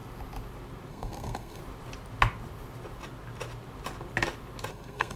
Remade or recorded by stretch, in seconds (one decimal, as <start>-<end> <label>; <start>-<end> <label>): 0.0-0.9 recorded; 0.9-1.6 remade; 1.6-4.7 recorded; 4.7-5.2 remade